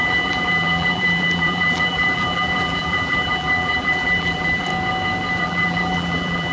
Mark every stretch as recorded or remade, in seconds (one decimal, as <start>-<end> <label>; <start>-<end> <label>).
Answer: 0.0-4.7 remade; 4.7-5.4 recorded; 5.4-6.5 remade